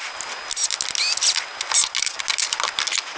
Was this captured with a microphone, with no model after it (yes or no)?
yes